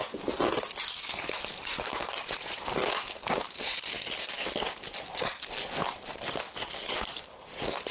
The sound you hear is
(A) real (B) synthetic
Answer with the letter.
A